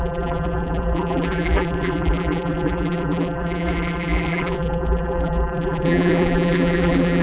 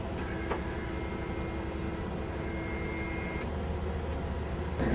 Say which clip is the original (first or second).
second